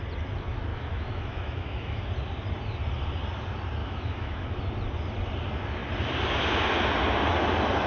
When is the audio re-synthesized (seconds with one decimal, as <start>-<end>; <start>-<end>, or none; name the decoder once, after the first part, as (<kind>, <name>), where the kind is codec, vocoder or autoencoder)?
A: 0.7-2.0 (autoencoder, DAC-VAE); 3.8-4.6